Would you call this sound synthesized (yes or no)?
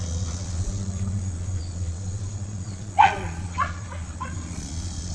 yes